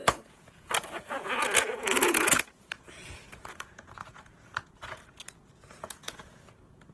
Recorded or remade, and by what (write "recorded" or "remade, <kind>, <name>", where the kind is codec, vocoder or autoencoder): remade, vocoder, Vocos